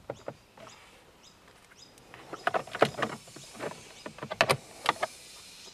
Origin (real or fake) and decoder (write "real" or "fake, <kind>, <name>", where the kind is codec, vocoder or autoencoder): real